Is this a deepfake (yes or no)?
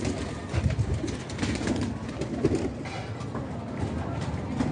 no